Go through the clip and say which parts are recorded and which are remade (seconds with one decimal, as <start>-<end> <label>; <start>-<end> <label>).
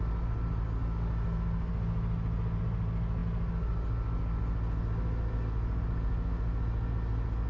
0.0-7.5 recorded